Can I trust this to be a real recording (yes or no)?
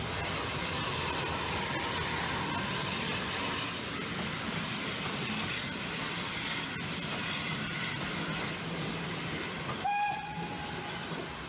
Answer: yes